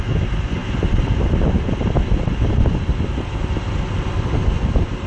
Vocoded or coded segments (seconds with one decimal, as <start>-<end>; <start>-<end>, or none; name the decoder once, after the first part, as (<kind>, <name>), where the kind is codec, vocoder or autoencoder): none